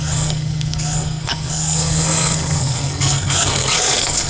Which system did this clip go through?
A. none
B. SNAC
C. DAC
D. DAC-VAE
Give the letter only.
B